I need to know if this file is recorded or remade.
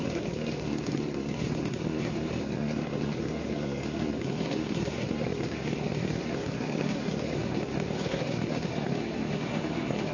remade